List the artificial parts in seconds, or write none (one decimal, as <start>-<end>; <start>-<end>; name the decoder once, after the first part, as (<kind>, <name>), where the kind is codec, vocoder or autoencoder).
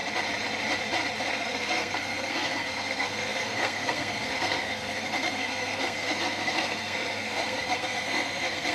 1.3-8.7 (codec, SNAC)